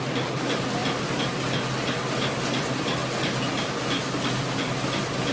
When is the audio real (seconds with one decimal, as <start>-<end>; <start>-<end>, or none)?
0.0-5.3